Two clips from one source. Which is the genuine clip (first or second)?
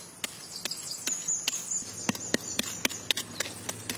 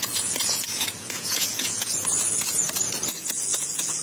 first